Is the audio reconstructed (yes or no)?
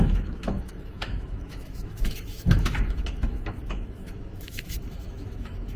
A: yes